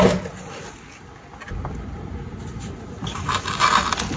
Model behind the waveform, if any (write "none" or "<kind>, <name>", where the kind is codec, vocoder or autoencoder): none